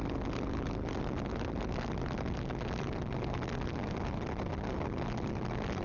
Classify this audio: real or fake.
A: real